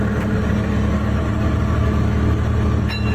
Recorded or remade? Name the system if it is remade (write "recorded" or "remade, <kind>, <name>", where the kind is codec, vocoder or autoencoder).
recorded